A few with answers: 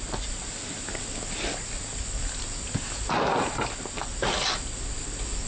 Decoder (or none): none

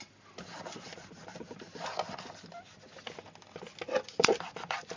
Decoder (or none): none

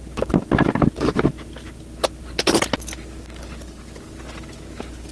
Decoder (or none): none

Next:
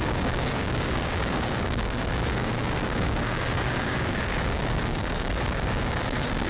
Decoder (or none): codec, DAC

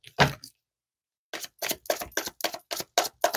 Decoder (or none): none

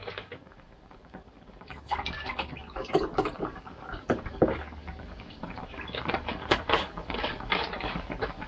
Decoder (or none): codec, DAC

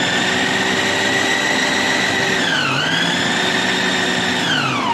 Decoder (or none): none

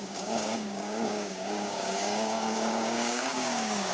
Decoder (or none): codec, DAC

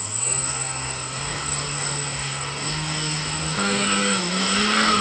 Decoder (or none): codec, DAC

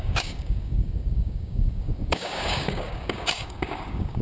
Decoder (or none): codec, DAC